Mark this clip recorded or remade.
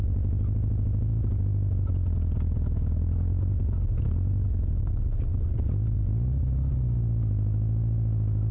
recorded